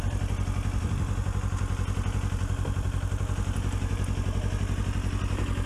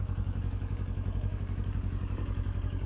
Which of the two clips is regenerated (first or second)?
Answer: second